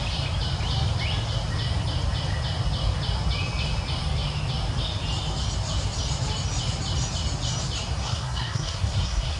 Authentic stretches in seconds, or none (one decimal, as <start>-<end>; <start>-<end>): 0.0-8.0